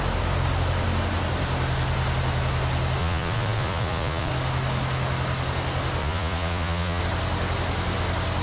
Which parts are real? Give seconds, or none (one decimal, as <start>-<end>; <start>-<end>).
0.0-3.0; 4.3-6.0; 7.0-8.4